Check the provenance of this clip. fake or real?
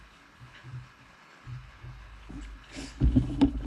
fake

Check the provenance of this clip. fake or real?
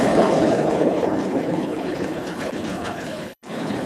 fake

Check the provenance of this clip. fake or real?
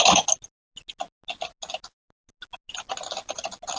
real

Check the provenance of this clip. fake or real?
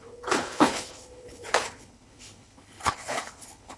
fake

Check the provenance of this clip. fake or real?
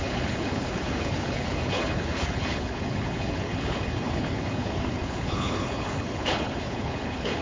fake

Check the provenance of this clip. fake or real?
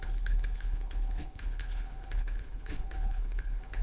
fake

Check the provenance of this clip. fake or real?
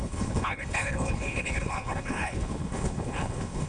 fake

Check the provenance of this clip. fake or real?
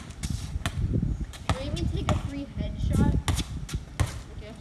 real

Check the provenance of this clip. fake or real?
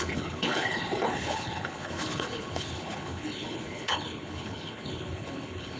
fake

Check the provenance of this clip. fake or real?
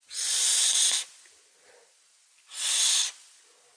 real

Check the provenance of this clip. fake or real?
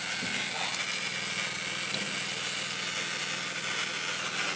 real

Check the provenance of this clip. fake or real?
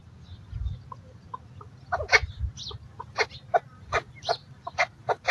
real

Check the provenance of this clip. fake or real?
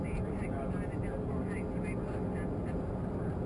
real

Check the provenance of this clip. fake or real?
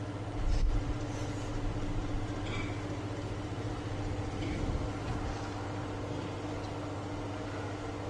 real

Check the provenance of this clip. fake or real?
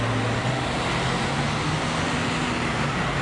real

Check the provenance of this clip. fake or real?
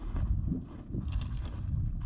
real